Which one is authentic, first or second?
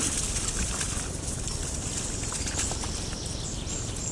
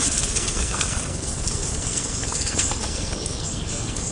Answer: first